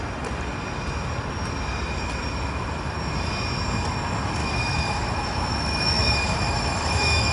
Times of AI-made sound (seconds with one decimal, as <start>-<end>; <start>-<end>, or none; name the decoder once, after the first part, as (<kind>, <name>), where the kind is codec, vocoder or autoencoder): 4.4-7.3 (autoencoder, DAC-VAE)